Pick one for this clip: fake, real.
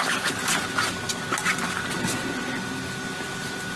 real